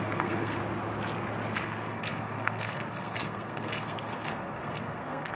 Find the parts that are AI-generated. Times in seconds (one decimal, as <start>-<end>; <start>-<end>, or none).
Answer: 0.0-0.6; 1.6-5.3